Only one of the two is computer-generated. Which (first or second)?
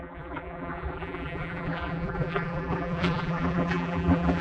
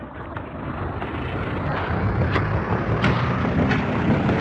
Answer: first